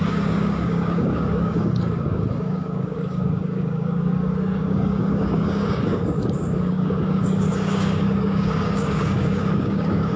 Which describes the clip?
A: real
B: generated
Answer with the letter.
B